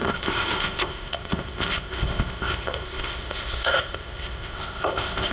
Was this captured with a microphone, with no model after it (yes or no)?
no